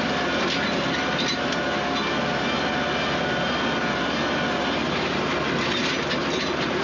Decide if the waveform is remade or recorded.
recorded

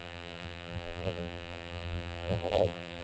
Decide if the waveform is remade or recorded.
remade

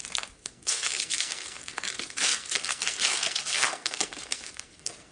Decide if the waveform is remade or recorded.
remade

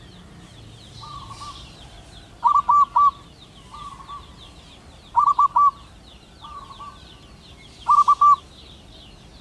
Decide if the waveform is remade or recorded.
recorded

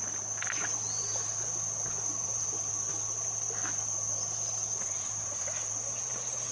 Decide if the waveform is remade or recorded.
recorded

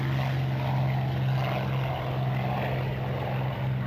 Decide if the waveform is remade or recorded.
recorded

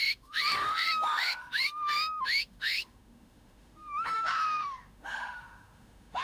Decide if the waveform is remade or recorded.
remade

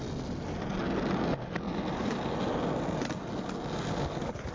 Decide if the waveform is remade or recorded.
recorded